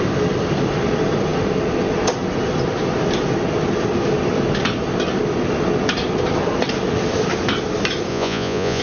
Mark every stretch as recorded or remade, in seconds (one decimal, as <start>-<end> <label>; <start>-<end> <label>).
0.0-8.1 recorded; 8.1-8.8 remade